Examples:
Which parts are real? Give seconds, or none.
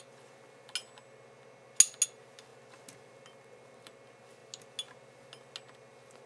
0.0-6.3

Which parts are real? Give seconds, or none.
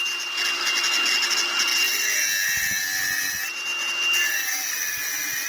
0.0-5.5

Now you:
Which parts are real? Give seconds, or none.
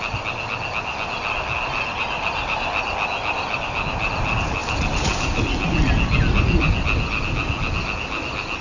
0.0-8.6